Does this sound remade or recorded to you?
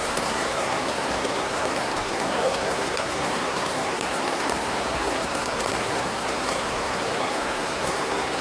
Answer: remade